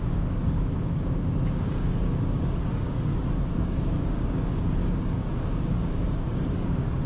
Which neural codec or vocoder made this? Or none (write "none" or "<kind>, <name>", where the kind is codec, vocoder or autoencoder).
codec, DAC